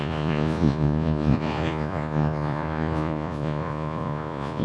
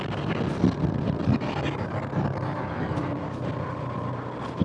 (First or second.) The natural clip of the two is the second